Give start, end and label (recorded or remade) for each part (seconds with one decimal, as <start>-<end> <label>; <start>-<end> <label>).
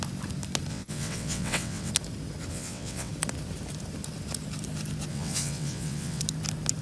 0.0-0.7 recorded; 0.7-1.9 remade; 1.9-2.5 recorded; 2.5-3.1 remade; 3.1-5.1 recorded; 5.1-6.2 remade; 6.2-6.8 recorded